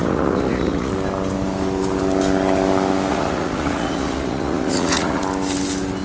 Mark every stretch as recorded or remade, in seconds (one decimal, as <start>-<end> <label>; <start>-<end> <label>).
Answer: 0.0-0.9 remade; 0.9-3.1 recorded; 3.1-5.2 remade; 5.2-6.0 recorded